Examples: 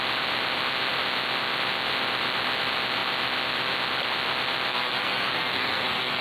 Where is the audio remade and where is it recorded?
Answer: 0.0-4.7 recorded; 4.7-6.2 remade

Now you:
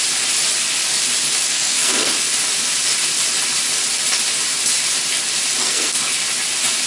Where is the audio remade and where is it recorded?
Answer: 0.0-1.5 recorded; 1.5-2.1 remade; 2.1-5.6 recorded; 5.6-6.1 remade; 6.1-6.9 recorded

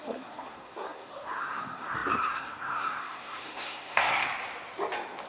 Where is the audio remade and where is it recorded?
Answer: 0.0-4.2 remade; 4.2-5.3 recorded

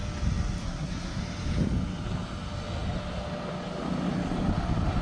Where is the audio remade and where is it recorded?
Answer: 0.0-0.6 recorded; 0.6-1.2 remade; 1.2-5.0 recorded

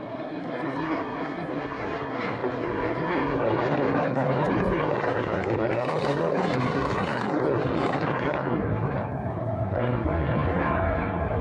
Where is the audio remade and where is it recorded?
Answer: 0.0-11.4 remade

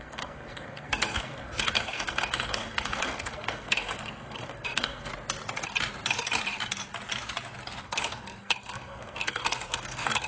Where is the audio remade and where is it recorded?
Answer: 0.0-5.1 remade; 5.1-7.8 recorded; 7.8-10.3 remade